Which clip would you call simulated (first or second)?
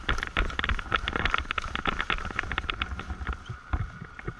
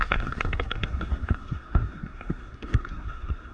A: second